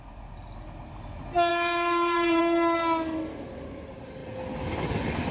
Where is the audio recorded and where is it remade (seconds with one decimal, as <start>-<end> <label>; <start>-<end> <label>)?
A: 0.0-1.5 recorded; 1.5-2.4 remade; 2.4-5.3 recorded